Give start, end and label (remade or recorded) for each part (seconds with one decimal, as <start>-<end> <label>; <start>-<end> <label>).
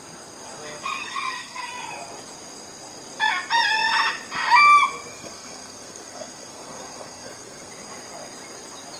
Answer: 0.0-1.0 recorded; 1.0-1.7 remade; 1.7-5.1 recorded; 5.1-7.7 remade; 7.7-9.0 recorded